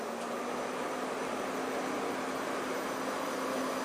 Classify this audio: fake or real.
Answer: real